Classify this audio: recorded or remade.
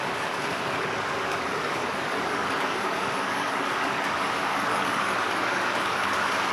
remade